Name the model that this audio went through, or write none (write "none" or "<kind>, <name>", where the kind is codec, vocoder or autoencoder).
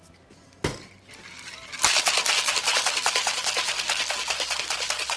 none